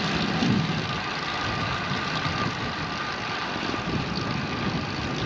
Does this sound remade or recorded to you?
recorded